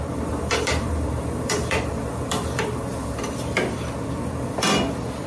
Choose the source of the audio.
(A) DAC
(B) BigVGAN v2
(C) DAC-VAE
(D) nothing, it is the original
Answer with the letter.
B